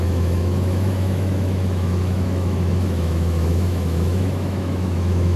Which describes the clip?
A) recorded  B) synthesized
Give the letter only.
B